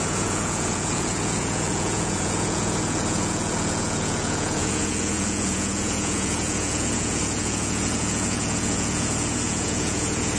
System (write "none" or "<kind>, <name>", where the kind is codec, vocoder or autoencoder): vocoder, Vocos